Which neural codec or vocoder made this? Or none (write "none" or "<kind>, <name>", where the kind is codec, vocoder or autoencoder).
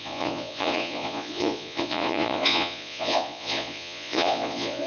vocoder, Vocos